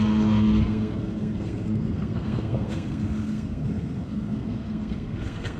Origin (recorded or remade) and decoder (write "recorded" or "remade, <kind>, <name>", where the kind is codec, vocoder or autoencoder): remade, codec, SNAC